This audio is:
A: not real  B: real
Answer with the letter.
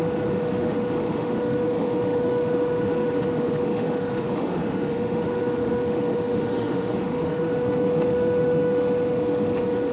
A